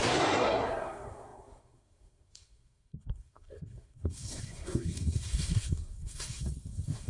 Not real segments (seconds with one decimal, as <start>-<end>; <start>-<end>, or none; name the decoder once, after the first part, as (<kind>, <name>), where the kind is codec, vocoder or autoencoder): 0.0-7.1 (codec, SNAC)